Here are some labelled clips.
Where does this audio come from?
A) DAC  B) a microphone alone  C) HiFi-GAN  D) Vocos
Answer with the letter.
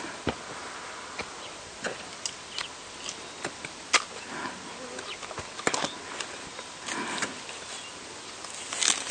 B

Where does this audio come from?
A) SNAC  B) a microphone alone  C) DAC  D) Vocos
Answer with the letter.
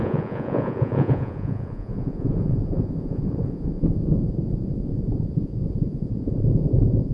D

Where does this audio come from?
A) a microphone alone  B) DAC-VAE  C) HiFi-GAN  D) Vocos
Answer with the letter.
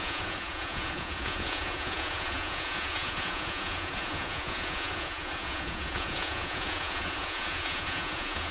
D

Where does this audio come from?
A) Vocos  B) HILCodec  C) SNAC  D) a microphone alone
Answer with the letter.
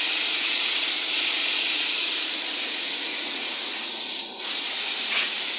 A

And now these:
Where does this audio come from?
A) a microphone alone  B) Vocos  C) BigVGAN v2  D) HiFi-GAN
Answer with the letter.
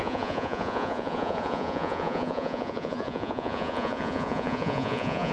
B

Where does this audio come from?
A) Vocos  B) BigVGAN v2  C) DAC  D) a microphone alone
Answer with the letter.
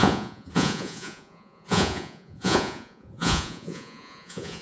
A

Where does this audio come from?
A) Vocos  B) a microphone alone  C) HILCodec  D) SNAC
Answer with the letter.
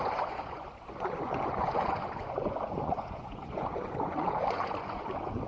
A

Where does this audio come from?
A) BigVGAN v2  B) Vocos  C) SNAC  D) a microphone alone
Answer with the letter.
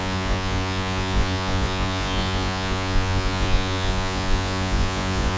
B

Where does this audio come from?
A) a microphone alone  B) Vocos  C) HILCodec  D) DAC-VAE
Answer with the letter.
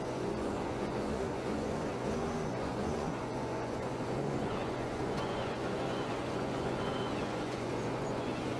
B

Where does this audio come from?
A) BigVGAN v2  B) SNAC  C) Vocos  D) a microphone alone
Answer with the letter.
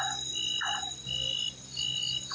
D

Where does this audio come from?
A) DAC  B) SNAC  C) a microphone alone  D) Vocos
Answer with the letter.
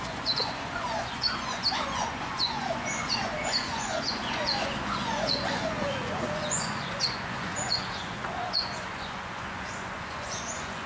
D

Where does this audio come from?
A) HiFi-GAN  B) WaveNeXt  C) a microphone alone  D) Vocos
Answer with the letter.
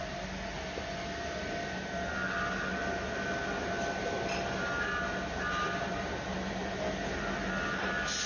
C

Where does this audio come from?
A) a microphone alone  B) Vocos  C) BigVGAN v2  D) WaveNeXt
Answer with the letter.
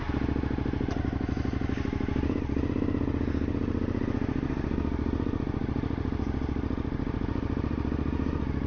A